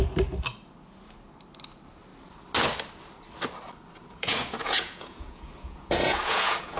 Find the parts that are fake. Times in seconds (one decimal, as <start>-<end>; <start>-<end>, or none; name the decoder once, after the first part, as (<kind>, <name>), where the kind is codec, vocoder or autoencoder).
4.0-6.8 (vocoder, Vocos)